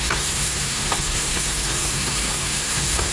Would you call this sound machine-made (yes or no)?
yes